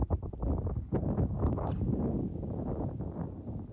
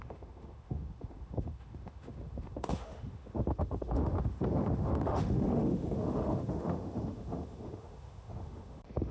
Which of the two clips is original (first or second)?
first